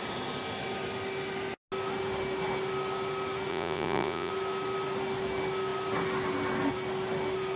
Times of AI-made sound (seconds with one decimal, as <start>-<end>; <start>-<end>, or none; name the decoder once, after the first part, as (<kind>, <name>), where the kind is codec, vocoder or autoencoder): 3.5-4.3 (vocoder, Vocos)